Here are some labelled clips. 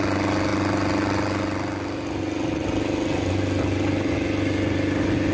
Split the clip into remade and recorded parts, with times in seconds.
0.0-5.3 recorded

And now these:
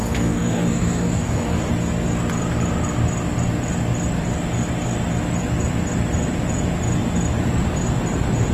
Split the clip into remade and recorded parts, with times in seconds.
0.0-1.7 remade; 1.7-8.5 recorded